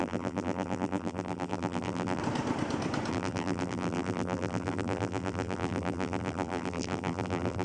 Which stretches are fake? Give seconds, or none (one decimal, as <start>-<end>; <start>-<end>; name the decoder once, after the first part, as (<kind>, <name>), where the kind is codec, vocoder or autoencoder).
0.0-2.2 (vocoder, BigVGAN v2); 3.1-7.6